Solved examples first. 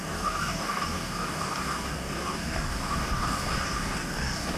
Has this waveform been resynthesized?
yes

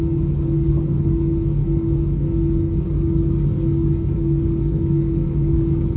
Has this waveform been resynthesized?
yes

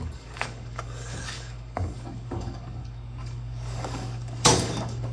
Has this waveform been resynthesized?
yes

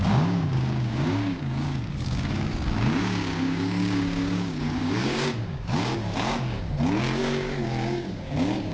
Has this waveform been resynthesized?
yes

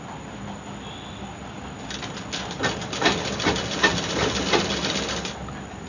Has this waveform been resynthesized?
no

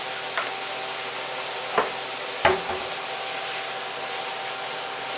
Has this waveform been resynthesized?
no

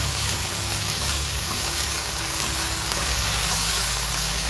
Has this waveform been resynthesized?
yes